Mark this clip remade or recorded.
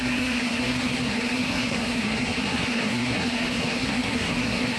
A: remade